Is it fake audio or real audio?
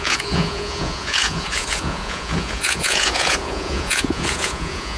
fake